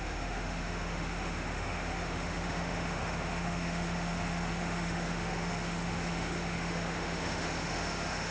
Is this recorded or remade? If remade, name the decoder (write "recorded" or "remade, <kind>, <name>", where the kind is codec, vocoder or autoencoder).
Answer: remade, autoencoder, DAC-VAE